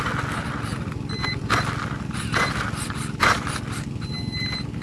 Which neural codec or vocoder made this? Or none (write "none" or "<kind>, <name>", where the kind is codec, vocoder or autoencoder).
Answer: none